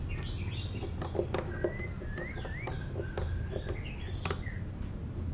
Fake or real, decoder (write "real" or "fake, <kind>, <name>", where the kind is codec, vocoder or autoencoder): real